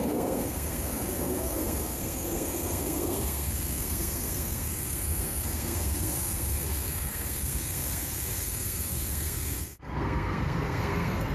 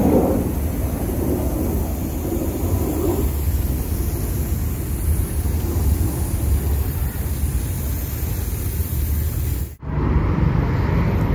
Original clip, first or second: second